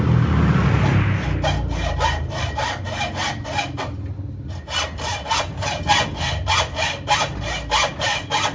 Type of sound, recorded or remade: recorded